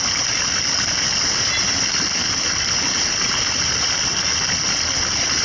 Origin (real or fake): real